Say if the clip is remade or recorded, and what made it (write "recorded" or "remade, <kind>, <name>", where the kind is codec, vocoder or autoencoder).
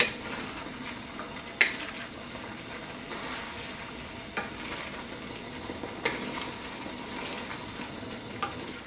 recorded